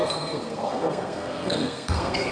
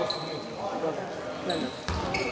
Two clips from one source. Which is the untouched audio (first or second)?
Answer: second